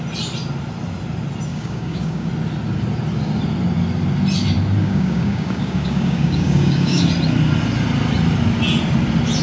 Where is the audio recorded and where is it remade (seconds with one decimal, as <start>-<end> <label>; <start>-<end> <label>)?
0.0-1.5 recorded; 1.5-2.3 remade; 2.3-4.8 recorded; 4.8-7.0 remade; 7.0-9.4 recorded